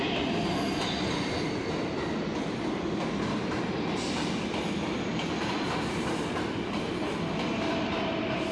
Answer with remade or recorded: recorded